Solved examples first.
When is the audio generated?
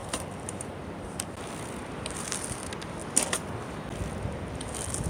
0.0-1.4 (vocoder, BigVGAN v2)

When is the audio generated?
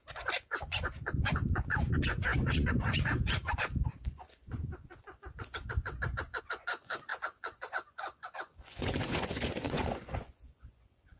0.0-11.2 (vocoder, Vocos)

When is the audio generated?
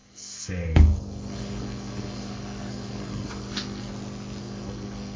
0.0-3.9 (codec, SNAC); 4.4-5.2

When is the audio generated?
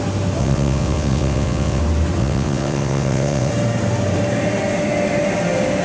0.4-1.8 (vocoder, WaveNeXt); 2.2-3.5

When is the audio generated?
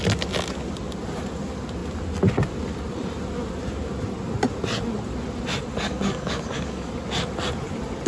5.7-6.9 (codec, DAC)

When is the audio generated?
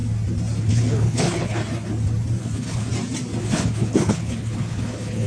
0.6-1.6 (codec, HILCodec); 2.4-2.9; 3.4-5.3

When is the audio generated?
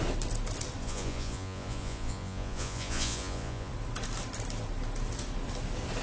0.8-3.7 (vocoder, Vocos)